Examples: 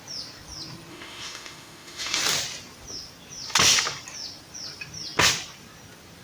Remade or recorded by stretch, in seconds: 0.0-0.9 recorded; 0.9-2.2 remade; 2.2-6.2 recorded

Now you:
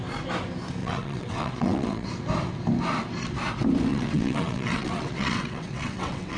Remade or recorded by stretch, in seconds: 0.0-0.8 recorded; 0.8-2.1 remade; 2.1-3.9 recorded; 3.9-6.4 remade

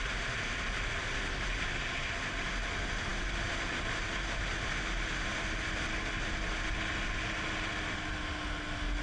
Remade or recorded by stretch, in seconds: 0.0-9.0 recorded

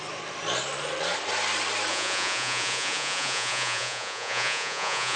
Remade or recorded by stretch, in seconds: 0.0-1.9 recorded; 1.9-5.2 remade

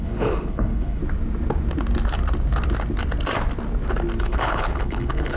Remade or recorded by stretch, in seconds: 0.0-1.0 remade; 1.0-4.2 recorded; 4.2-5.4 remade

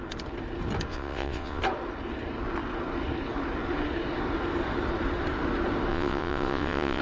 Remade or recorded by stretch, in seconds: 0.0-0.9 recorded; 0.9-1.6 remade; 1.6-5.9 recorded; 5.9-7.0 remade